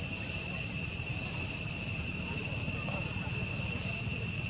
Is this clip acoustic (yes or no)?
no